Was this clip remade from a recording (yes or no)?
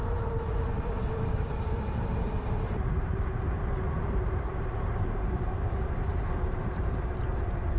yes